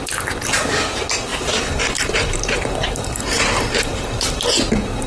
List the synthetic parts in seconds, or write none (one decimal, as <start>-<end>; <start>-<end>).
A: 1.3-4.4